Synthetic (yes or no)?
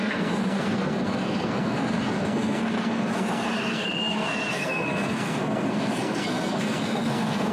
yes